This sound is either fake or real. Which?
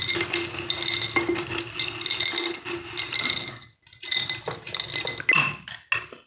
real